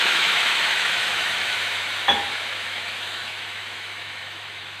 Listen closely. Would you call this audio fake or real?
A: fake